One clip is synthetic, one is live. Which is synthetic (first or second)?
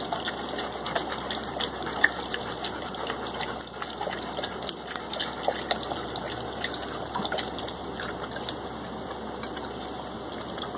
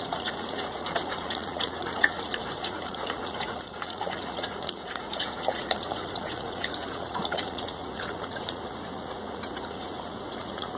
second